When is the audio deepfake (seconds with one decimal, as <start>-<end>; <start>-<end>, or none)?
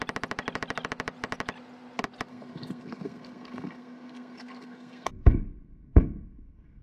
2.3-6.8